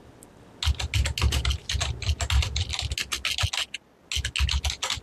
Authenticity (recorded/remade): recorded